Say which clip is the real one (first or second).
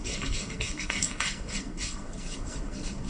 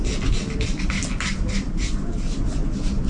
second